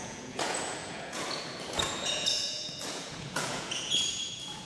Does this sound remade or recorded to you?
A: remade